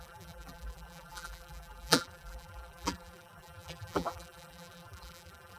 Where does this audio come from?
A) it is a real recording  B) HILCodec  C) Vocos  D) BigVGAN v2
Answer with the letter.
D